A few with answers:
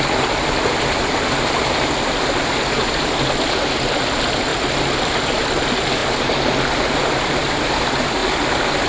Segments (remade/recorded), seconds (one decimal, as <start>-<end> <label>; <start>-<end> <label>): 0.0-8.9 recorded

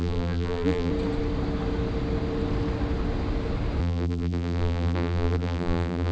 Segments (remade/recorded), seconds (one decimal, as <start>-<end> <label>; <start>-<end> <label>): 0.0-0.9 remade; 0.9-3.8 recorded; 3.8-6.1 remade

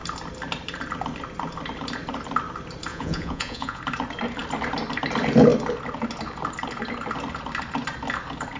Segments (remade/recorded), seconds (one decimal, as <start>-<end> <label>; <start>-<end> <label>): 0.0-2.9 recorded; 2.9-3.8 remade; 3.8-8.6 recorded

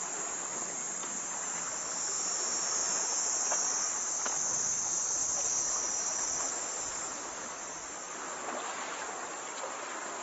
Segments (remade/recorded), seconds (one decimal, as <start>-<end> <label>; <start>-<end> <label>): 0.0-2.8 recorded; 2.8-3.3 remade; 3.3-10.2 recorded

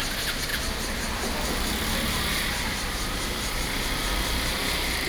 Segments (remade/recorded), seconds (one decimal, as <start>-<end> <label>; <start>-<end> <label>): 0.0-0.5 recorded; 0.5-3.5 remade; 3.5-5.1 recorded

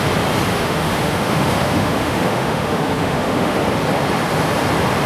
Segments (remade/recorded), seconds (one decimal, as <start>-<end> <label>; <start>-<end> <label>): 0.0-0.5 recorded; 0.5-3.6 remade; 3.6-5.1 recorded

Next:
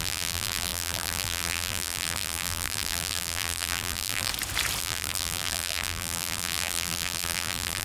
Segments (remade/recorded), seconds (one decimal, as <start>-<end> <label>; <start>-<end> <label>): 0.0-4.3 remade; 4.3-4.8 recorded; 4.8-7.8 remade